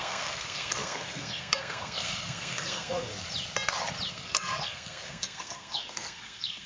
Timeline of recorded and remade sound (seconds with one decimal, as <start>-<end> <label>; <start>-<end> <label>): 0.0-3.1 remade; 3.1-4.1 recorded; 4.1-6.7 remade